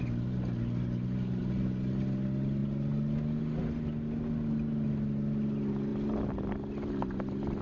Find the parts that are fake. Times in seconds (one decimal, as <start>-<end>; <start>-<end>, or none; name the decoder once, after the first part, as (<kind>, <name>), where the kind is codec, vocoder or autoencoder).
none